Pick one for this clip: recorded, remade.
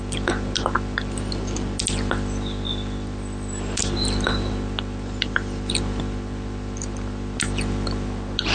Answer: recorded